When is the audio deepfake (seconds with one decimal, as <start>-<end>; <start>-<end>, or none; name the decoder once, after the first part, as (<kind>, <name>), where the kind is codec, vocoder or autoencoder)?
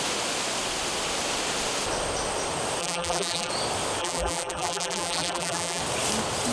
2.8-3.5 (vocoder, BigVGAN v2); 4.0-5.8